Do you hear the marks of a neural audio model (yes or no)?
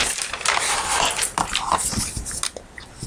no